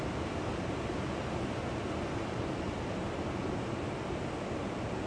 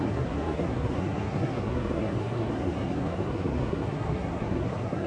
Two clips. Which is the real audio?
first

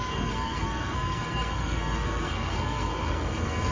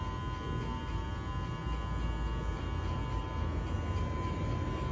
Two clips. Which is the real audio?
second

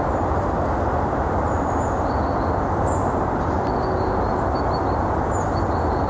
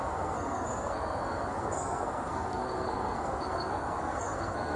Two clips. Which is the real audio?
first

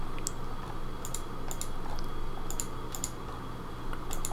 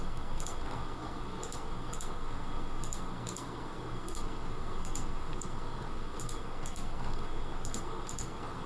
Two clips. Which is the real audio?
first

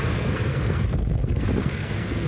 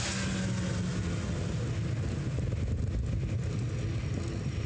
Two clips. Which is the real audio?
second